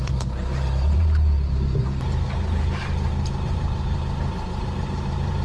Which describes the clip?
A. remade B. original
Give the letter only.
A